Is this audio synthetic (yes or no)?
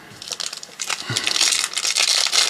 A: no